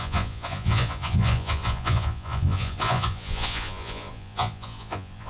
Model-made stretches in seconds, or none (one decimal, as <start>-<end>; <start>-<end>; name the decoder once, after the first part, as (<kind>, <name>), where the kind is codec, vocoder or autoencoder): 0.0-5.3 (vocoder, Vocos)